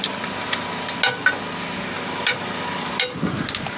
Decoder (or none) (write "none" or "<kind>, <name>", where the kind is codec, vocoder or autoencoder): none